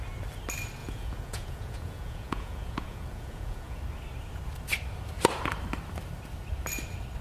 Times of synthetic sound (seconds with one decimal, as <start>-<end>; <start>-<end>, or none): 0.8-3.8

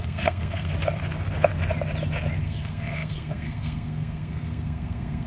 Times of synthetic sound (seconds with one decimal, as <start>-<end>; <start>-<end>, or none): 0.0-0.7; 2.4-5.3

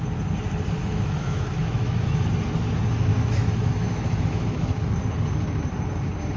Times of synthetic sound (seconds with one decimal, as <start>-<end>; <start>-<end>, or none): 0.8-2.3; 3.1-4.9

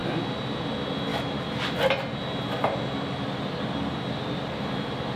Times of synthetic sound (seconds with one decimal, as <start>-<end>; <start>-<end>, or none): none

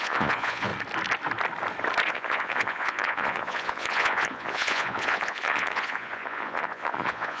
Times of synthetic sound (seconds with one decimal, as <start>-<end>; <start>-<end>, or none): 0.0-0.7; 2.1-7.4